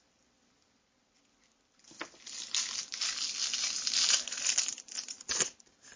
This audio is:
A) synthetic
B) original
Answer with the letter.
B